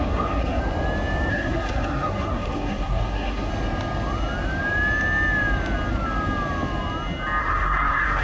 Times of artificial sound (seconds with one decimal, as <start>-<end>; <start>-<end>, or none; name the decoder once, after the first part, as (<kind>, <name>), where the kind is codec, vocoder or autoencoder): 0.0-0.6 (codec, SNAC); 1.3-3.5; 7.4-8.2